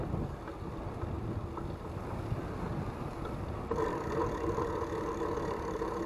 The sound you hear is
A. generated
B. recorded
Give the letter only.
B